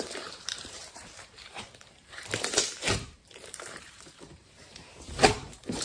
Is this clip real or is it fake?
fake